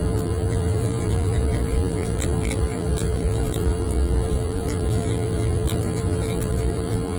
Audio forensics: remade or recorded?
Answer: remade